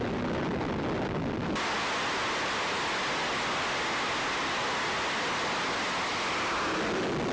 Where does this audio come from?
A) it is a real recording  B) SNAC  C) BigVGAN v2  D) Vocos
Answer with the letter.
A